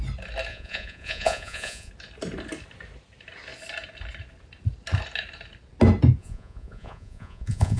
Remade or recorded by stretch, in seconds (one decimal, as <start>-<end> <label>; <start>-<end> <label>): 0.0-0.5 recorded; 0.5-1.9 remade; 1.9-6.2 recorded; 6.2-7.8 remade